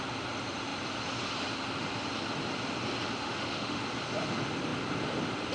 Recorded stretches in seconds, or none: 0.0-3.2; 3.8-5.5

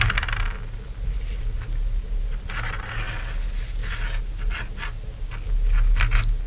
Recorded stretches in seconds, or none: 0.0-6.5

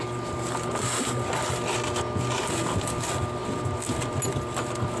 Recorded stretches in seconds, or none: 0.0-5.0

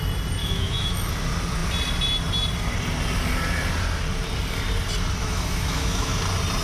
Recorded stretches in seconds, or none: 0.0-0.4; 1.1-5.2; 6.1-6.6

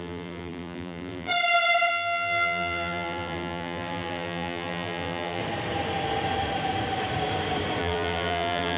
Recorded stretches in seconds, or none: 1.3-1.9; 5.4-7.8

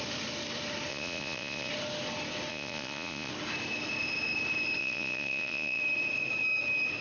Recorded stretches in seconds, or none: 0.0-0.9; 1.7-2.5; 3.3-4.8; 5.8-7.0

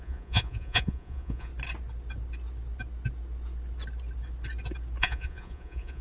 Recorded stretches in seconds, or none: 1.5-5.0